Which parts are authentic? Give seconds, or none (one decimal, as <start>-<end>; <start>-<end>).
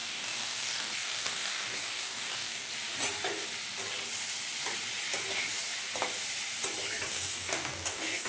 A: 2.7-7.1